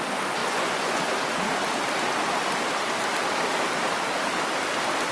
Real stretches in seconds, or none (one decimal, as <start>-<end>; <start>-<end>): 0.0-0.4; 1.0-5.1

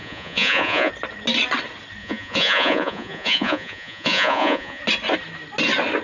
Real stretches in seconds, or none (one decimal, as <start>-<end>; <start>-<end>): 0.9-2.0; 4.8-6.0

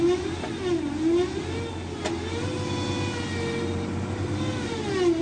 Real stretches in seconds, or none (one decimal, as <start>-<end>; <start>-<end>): 0.0-5.2

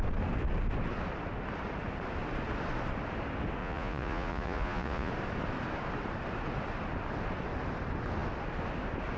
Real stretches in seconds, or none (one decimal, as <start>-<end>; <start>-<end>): 0.0-3.6; 5.1-9.2

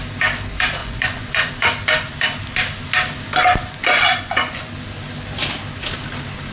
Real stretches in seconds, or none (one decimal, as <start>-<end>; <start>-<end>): 0.0-0.8; 1.5-3.5; 4.7-6.5

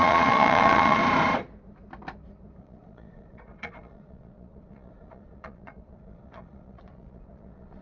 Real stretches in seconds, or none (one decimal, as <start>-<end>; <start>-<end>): 1.0-2.6

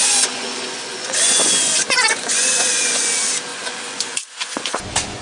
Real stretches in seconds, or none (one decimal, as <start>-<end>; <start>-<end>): 3.1-3.5

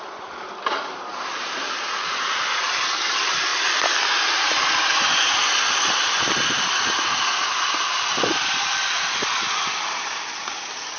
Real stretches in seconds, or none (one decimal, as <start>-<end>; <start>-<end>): 0.0-11.0